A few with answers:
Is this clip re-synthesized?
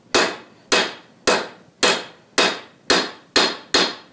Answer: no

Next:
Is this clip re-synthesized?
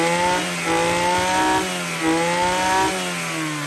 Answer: no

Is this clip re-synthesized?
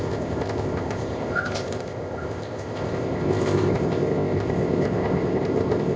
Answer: yes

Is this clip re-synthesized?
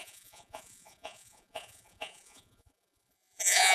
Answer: yes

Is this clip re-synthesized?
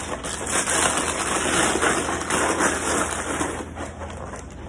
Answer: no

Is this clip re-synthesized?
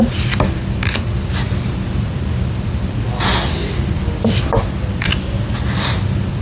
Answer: no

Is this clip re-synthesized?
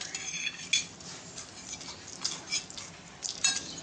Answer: no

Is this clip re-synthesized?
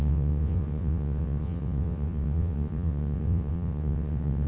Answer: yes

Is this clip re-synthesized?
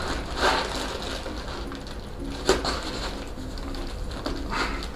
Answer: no